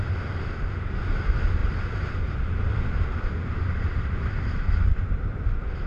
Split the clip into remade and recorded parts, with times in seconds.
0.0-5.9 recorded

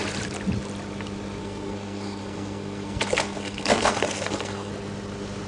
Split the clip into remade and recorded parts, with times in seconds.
0.0-1.4 recorded; 1.4-4.7 remade; 4.7-5.5 recorded